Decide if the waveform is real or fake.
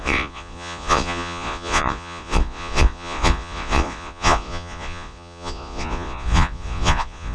fake